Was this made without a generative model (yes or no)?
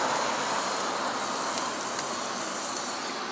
yes